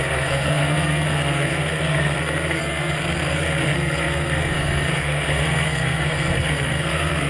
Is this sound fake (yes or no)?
yes